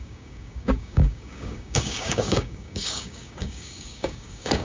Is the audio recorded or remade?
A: remade